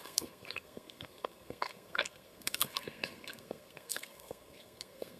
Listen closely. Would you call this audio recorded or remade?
remade